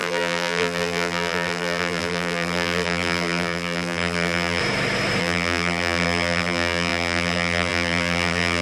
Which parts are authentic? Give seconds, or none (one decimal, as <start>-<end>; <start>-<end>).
4.6-5.2